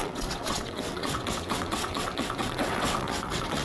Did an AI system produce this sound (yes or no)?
yes